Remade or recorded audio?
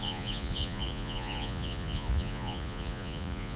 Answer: remade